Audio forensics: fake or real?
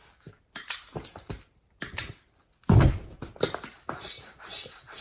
real